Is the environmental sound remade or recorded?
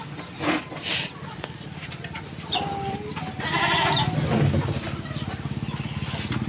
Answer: recorded